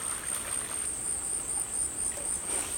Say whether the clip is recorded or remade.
recorded